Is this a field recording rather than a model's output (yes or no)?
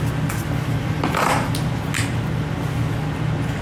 yes